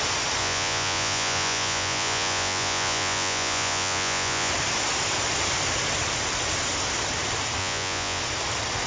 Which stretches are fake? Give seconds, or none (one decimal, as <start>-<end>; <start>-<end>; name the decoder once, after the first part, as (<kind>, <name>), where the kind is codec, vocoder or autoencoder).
0.4-4.5 (vocoder, Vocos); 7.6-8.2